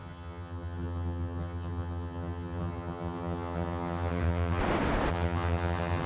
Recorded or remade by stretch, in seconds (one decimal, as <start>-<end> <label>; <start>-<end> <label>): 0.0-4.6 remade; 4.6-5.1 recorded; 5.1-6.1 remade